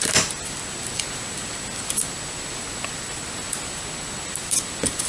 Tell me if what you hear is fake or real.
real